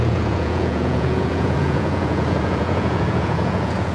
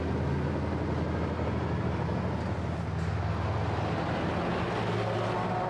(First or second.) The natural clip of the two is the second